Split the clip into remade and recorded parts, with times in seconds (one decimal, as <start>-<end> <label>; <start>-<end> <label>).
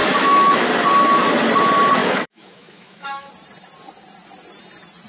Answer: 0.0-0.7 remade; 0.7-2.0 recorded; 2.0-3.3 remade; 3.3-5.1 recorded